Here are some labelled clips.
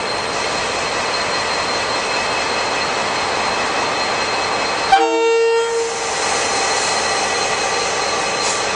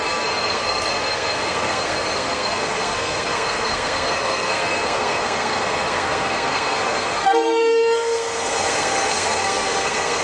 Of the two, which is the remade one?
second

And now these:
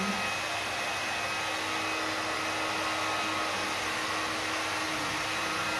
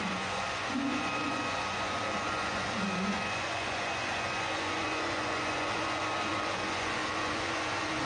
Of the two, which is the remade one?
second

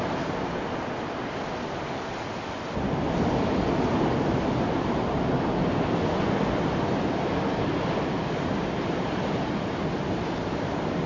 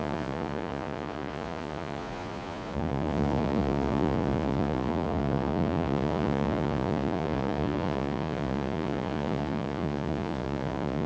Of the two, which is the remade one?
second